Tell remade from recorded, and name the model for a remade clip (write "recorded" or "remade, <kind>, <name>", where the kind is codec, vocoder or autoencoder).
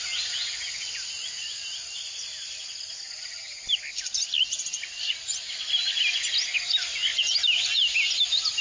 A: recorded